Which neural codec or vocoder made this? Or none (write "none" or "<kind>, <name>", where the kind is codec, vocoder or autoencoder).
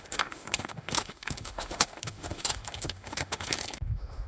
autoencoder, DAC-VAE